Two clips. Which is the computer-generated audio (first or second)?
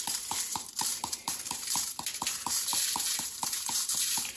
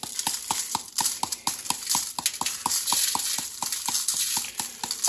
first